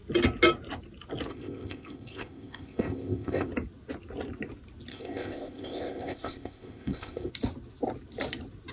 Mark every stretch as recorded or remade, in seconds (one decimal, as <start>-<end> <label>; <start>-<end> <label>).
0.0-1.3 recorded; 1.3-3.5 remade; 3.5-4.9 recorded; 4.9-7.3 remade; 7.3-8.7 recorded